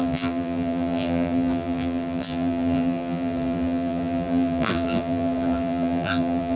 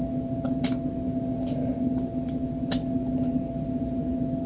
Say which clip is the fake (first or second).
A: first